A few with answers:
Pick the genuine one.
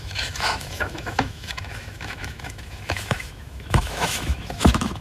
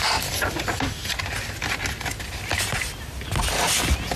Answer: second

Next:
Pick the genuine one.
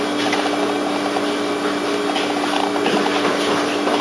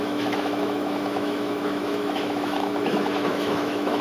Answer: first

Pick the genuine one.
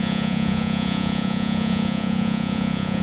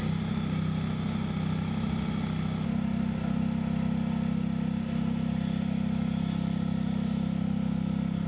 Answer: second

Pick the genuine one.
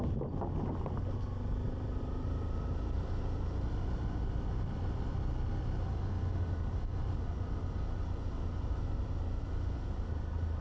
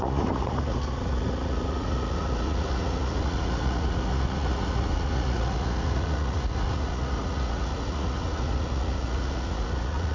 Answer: first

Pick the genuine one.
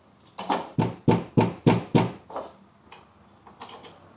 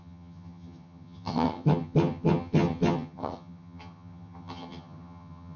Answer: first